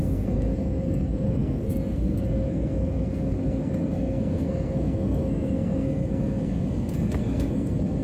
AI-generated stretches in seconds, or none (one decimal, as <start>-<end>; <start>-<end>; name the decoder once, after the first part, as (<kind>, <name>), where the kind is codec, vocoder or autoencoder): 0.0-8.0 (codec, SNAC)